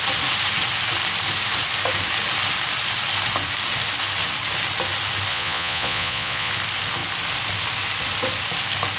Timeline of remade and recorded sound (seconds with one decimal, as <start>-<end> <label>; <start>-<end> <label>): 0.0-5.3 recorded; 5.3-6.5 remade; 6.5-9.0 recorded